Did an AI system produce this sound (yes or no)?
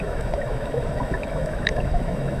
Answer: yes